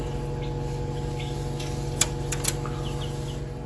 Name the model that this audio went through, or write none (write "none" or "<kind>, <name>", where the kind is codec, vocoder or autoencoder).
none